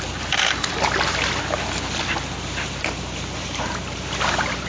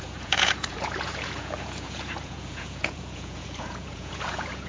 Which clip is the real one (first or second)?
first